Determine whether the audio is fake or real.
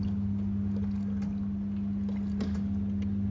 real